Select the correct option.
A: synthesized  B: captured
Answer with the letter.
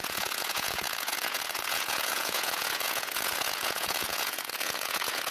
A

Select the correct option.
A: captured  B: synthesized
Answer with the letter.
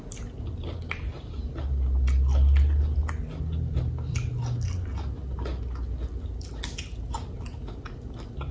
A